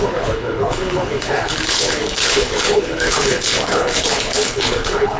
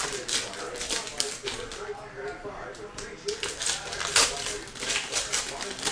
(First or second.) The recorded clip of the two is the second